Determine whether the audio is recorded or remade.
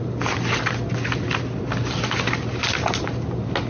recorded